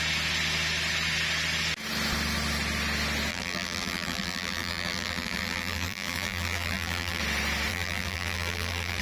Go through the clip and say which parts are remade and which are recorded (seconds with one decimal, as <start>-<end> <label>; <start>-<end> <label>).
0.0-3.3 recorded; 3.3-7.2 remade; 7.2-7.7 recorded; 7.7-9.0 remade